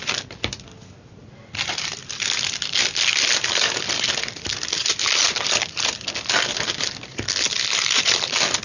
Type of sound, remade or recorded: recorded